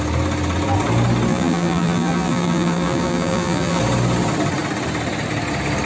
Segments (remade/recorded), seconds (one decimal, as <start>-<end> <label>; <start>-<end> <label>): 0.0-1.3 recorded; 1.3-3.8 remade; 3.8-5.9 recorded